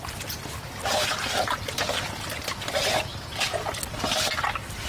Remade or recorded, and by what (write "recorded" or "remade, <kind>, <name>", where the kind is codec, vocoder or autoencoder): recorded